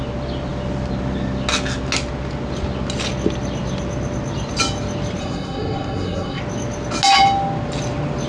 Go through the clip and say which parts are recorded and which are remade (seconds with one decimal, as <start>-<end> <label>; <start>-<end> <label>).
0.0-5.2 recorded; 5.2-6.4 remade; 6.4-8.3 recorded